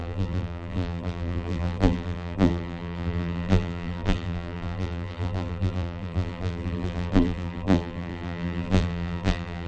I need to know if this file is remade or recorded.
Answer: remade